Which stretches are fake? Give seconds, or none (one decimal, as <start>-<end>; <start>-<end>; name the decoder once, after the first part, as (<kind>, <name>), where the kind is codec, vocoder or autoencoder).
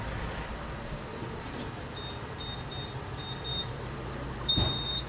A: 1.1-1.6 (vocoder, BigVGAN v2); 3.5-5.1